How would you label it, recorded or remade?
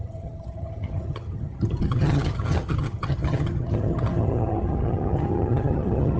remade